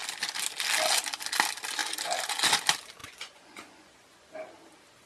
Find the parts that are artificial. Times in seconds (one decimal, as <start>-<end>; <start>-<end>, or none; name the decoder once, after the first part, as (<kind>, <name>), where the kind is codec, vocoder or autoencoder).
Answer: 3.0-4.3 (vocoder, Vocos)